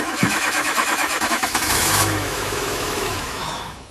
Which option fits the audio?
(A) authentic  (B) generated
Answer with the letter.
B